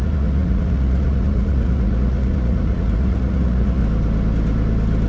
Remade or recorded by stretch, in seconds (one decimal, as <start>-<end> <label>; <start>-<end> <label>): 0.0-3.8 remade; 3.8-5.1 recorded